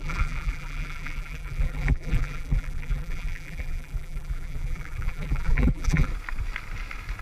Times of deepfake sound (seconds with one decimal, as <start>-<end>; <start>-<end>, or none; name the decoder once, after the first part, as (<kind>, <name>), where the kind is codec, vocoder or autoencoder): 0.0-6.1 (vocoder, BigVGAN v2)